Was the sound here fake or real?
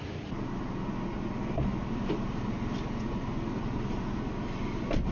real